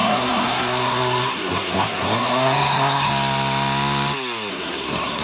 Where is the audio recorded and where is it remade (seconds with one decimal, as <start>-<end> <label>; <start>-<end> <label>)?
0.0-3.1 remade; 3.1-4.5 recorded; 4.5-5.2 remade